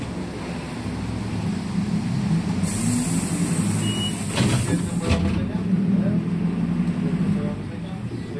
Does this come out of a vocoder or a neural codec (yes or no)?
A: no